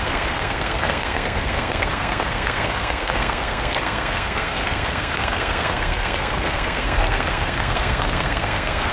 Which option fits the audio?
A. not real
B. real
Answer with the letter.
A